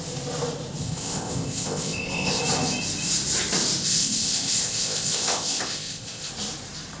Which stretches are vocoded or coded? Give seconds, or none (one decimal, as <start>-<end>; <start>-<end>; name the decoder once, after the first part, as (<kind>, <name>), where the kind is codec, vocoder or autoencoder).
0.8-2.4 (codec, ZipCodec); 3.8-6.3